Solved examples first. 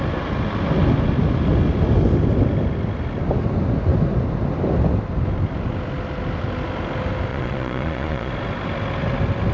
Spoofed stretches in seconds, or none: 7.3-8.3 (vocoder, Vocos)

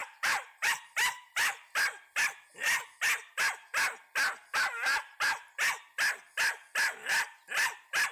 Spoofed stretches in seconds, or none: 0.0-0.7 (vocoder, BigVGAN v2)

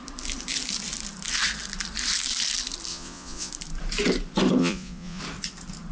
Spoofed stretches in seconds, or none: 2.9-3.5 (vocoder, Vocos); 4.6-5.2

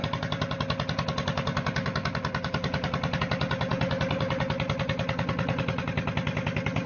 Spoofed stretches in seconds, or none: none

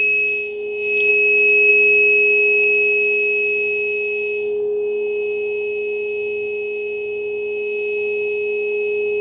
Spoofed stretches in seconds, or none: none